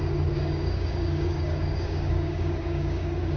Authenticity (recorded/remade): remade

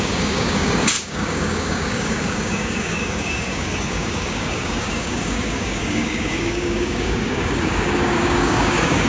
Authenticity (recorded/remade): remade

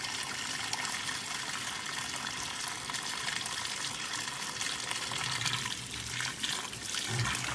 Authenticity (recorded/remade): recorded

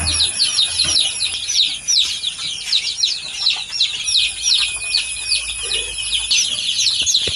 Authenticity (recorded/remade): recorded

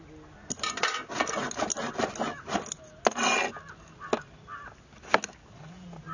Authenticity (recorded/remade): recorded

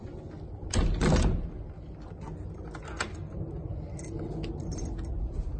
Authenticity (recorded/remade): recorded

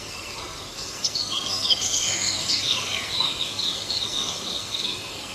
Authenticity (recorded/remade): remade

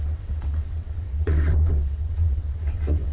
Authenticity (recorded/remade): remade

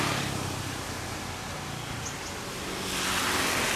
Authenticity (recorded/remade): recorded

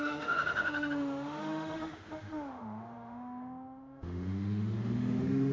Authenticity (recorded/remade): remade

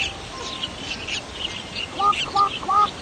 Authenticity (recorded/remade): recorded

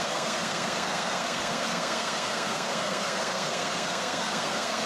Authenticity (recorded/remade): remade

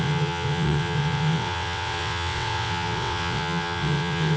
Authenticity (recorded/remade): remade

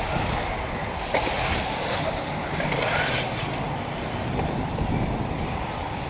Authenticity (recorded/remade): recorded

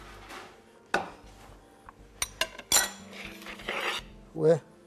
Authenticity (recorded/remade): recorded